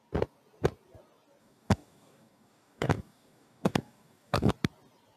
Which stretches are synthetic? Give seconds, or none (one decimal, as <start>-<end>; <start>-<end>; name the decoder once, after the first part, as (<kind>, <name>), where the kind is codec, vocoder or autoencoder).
1.4-4.5 (codec, DAC)